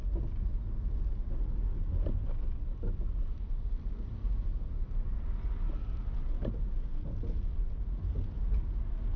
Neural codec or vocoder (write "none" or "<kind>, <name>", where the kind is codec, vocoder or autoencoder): none